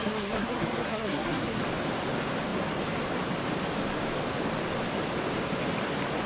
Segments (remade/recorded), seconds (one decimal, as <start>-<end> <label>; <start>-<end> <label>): 0.0-1.6 remade; 1.6-6.3 recorded

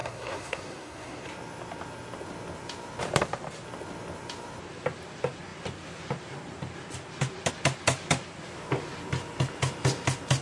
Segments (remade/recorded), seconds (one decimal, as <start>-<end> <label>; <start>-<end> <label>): 0.0-1.3 remade; 1.3-10.4 recorded

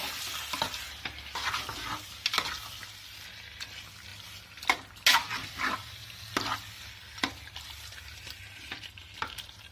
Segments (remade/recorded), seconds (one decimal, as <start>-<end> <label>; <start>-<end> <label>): 0.0-9.7 recorded

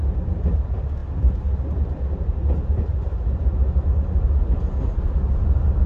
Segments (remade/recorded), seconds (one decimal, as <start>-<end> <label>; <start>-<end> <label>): 0.0-5.9 recorded

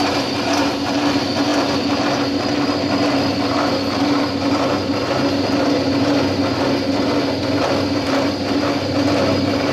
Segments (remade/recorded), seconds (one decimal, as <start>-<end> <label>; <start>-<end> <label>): 0.0-9.7 recorded

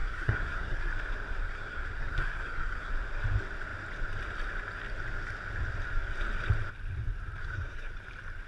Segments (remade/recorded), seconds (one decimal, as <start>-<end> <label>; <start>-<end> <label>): 0.0-0.9 remade; 0.9-1.4 recorded; 1.4-2.9 remade; 2.9-7.4 recorded; 7.4-7.9 remade; 7.9-8.5 recorded

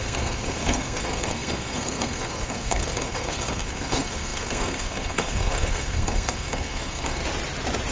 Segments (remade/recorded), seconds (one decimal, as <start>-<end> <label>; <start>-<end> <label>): 0.0-7.2 remade; 7.2-7.9 recorded

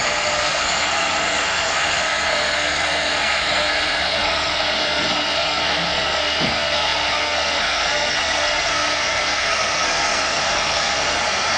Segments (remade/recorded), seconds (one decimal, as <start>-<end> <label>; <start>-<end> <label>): 0.0-11.6 remade